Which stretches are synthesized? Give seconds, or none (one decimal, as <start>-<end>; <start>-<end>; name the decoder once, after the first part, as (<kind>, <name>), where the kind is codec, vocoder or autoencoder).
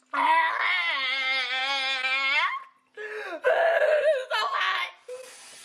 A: none